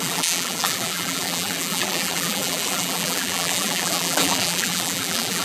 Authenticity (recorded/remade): remade